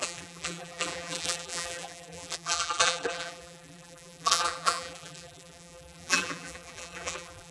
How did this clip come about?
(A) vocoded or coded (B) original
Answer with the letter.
A